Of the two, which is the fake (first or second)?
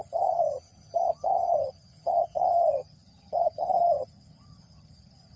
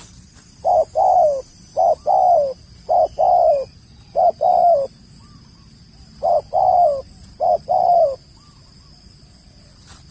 first